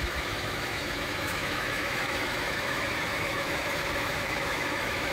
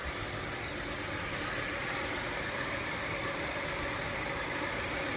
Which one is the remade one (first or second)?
first